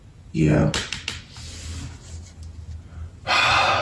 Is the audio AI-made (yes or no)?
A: no